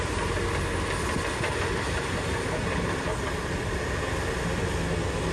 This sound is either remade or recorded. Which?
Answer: recorded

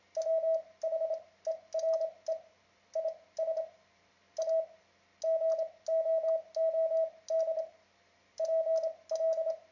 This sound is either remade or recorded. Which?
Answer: recorded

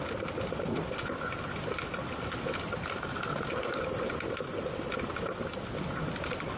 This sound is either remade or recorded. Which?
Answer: recorded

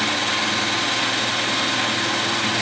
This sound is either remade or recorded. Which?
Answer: recorded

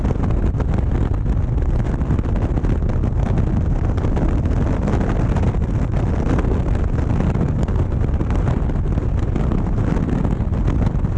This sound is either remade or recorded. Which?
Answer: recorded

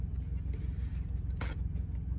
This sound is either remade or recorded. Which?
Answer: recorded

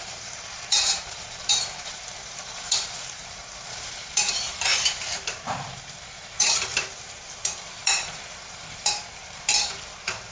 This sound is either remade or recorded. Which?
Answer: remade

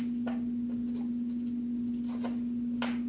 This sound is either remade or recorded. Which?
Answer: recorded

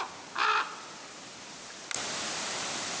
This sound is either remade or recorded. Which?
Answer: recorded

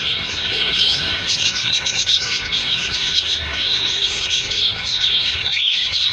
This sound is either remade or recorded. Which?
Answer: remade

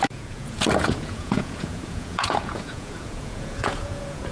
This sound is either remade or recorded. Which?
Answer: remade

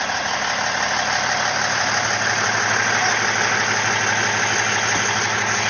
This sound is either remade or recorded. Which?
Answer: recorded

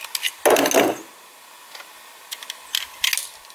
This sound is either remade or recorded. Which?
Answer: recorded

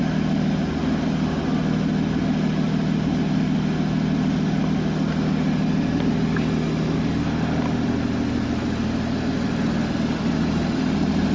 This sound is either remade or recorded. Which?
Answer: recorded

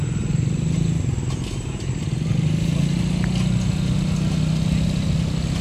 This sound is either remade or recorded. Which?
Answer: recorded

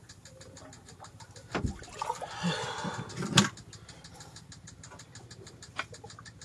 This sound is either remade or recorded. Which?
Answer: recorded